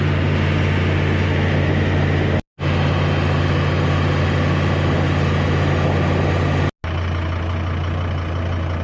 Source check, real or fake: real